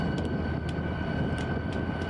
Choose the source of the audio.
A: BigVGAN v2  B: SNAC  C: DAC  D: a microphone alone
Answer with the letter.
D